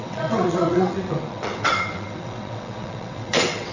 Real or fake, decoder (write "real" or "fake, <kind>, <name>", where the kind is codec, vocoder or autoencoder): fake, vocoder, WaveNeXt